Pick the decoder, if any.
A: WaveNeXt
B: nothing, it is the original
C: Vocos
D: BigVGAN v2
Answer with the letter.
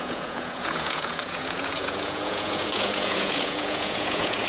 C